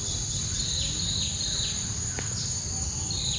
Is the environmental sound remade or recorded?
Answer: recorded